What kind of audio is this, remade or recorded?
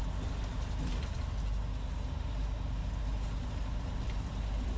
recorded